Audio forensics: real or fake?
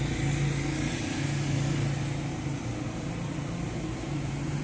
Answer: real